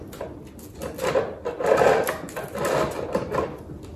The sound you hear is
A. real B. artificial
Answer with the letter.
A